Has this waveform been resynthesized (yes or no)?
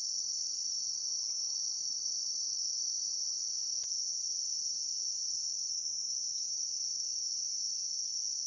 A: no